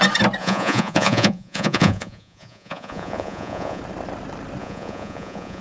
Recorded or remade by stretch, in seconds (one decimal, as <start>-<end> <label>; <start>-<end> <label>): 0.0-0.4 recorded; 0.4-3.8 remade; 3.8-4.6 recorded; 4.6-5.6 remade